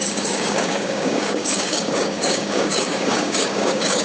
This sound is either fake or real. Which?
fake